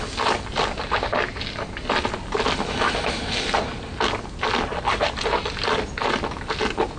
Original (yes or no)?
yes